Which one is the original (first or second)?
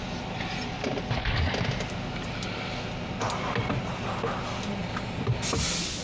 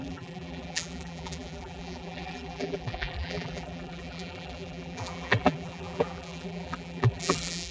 first